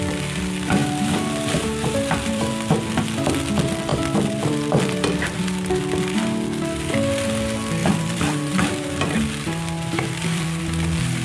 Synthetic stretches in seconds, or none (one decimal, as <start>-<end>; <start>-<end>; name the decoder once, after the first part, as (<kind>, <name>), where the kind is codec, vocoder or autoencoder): 0.8-2.5 (vocoder, BigVGAN v2); 3.9-5.8; 7.8-10.6